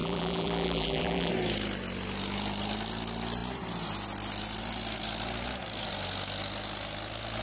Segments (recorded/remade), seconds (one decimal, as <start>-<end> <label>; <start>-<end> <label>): 0.0-1.3 remade; 1.3-7.4 recorded